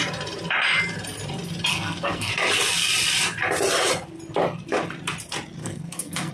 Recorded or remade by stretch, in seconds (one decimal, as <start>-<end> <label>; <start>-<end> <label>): 0.0-1.7 recorded; 1.7-2.3 remade; 2.3-5.6 recorded; 5.6-6.3 remade